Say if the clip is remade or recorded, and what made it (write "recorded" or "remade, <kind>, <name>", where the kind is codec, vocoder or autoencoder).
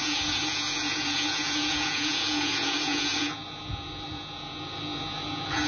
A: remade, vocoder, Vocos